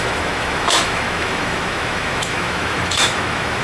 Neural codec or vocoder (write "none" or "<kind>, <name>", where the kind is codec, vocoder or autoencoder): autoencoder, DAC-VAE